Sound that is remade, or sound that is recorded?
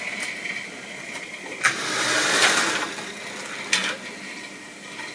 recorded